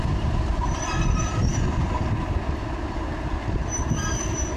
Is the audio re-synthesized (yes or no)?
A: no